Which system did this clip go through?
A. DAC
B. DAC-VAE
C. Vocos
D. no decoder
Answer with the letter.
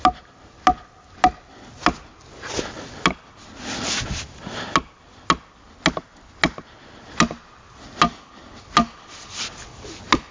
D